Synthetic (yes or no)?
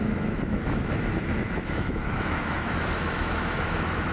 yes